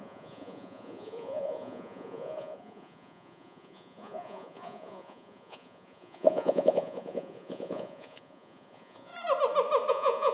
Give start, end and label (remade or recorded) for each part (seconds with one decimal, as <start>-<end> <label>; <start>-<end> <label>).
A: 0.0-9.1 remade; 9.1-9.9 recorded; 9.9-10.3 remade